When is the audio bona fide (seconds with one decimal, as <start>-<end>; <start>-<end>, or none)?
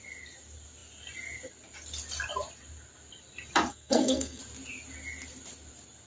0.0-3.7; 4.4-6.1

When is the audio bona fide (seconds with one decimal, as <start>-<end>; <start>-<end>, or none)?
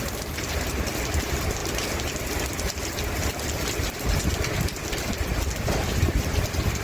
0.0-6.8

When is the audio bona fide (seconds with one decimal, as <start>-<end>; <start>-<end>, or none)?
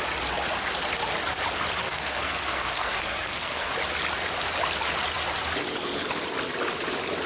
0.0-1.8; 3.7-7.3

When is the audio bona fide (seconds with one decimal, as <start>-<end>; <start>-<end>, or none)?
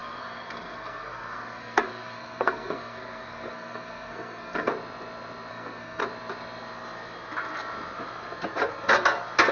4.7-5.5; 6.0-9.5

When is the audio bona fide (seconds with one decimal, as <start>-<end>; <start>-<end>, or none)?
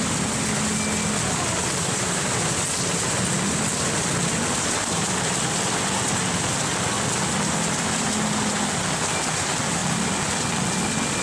0.0-11.2